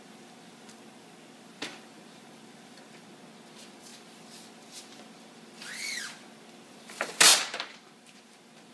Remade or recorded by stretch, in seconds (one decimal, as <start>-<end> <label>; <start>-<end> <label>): 0.0-1.7 recorded; 1.7-2.8 remade; 2.8-7.3 recorded; 7.3-8.7 remade